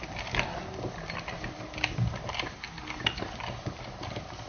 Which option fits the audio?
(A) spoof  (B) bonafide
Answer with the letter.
B